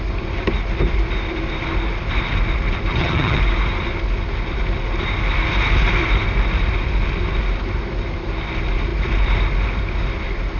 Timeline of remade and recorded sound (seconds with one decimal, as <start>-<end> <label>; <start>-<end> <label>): 0.0-2.9 recorded; 2.9-3.4 remade; 3.4-10.6 recorded